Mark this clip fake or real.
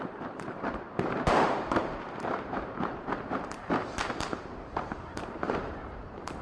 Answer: fake